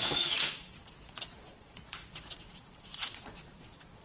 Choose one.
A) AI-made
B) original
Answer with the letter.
A